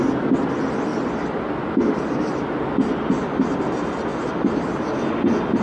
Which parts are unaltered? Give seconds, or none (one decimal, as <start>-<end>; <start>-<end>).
0.0-0.9; 2.6-5.6